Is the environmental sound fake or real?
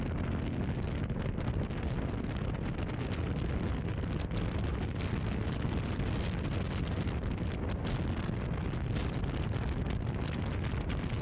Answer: real